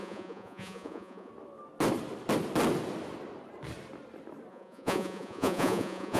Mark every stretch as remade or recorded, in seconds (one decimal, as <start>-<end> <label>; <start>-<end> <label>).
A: 0.0-1.3 remade; 1.3-4.5 recorded; 4.5-6.2 remade